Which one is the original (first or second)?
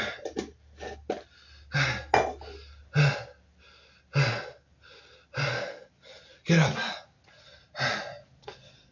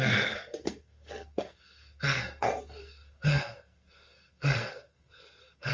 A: first